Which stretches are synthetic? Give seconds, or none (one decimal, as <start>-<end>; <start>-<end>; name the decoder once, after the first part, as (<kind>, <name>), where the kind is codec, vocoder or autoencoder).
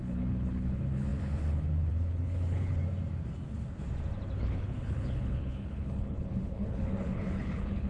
0.0-2.8 (codec, HILCodec); 4.4-7.9